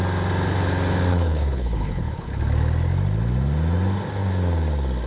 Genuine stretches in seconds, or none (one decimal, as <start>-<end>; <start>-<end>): 0.0-1.1; 2.4-5.1